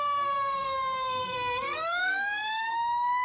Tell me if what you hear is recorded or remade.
remade